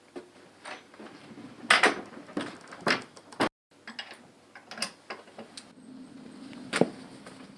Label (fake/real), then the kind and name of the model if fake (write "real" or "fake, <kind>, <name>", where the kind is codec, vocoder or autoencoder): real